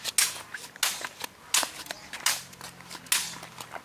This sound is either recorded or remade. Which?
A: recorded